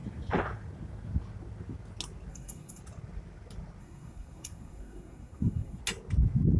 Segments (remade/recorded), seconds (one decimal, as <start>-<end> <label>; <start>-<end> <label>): 0.0-2.3 recorded; 2.3-2.8 remade; 2.8-3.8 recorded; 3.8-5.8 remade; 5.8-6.6 recorded